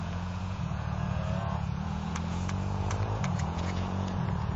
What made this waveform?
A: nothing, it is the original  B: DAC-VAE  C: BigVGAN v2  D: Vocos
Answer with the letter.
D